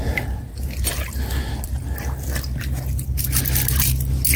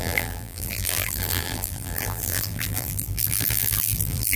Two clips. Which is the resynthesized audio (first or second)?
second